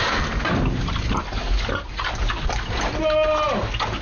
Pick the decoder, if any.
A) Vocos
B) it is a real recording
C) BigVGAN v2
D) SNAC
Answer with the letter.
B